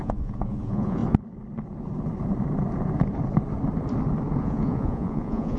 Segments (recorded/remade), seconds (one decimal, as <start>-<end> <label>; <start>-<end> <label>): 0.0-1.0 remade; 1.0-4.4 recorded; 4.4-5.6 remade